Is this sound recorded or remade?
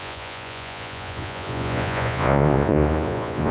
remade